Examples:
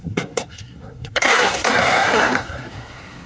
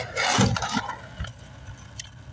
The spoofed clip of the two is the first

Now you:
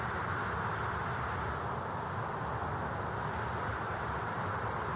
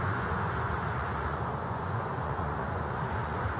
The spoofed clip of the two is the second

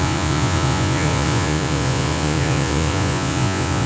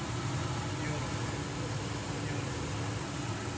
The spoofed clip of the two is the first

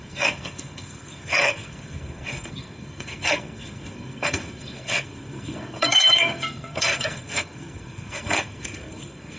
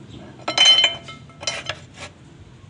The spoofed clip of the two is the first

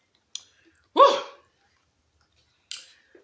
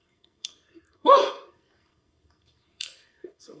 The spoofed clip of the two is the second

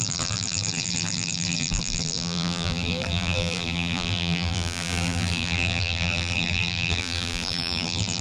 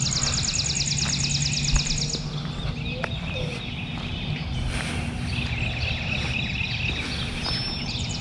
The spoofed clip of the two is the first